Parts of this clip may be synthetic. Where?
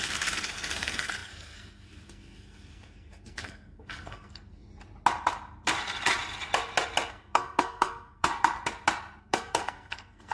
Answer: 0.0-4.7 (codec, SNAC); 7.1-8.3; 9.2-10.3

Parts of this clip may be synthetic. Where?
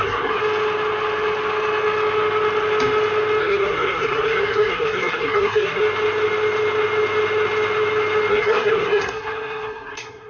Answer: 0.0-0.4 (codec, SNAC); 3.4-5.8; 8.3-10.3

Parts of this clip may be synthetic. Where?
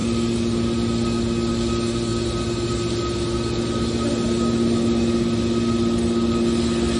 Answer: none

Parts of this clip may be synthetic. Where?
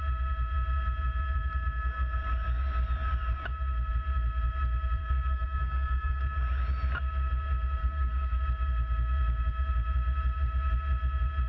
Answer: 5.0-6.2 (codec, SNAC); 7.8-8.4